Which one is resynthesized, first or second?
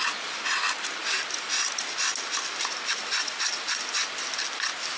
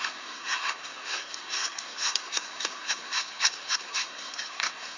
second